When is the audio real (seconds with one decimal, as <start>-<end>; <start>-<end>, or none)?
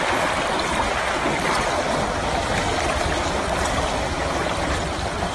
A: 0.0-2.2; 3.1-5.3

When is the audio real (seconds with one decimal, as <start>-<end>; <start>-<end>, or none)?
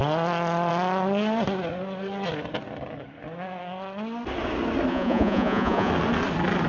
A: 0.0-4.9; 5.9-6.7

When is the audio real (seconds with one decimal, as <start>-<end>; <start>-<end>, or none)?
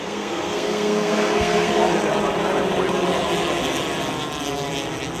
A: 1.9-5.2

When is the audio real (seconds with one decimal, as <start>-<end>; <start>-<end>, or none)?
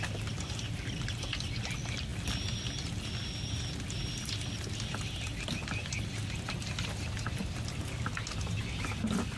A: 0.0-9.4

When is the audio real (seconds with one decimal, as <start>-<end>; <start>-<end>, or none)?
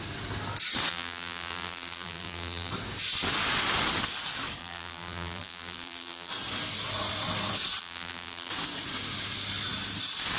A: 0.0-0.9; 2.7-4.6; 6.3-7.8; 8.5-10.4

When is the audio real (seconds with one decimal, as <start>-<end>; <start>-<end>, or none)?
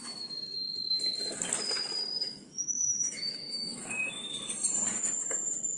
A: 0.0-2.2; 4.3-5.8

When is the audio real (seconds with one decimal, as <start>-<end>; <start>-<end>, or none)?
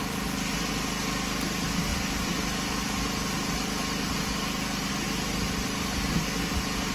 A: 0.0-6.9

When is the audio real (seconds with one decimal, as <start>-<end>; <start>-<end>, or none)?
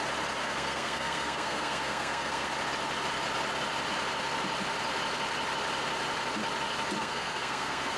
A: 0.0-0.4; 2.5-7.0